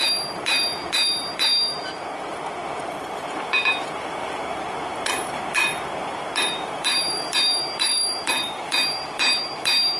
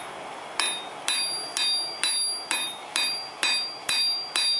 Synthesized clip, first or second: first